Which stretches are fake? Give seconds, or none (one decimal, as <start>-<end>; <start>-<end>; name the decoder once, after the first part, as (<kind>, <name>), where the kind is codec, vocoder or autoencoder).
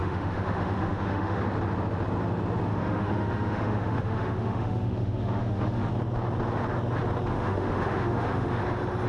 0.0-1.4 (autoencoder, DAC-VAE); 2.7-5.9; 7.3-8.6